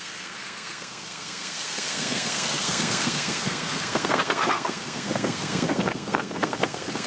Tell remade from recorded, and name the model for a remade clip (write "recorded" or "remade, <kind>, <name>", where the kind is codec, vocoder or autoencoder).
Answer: remade, codec, SNAC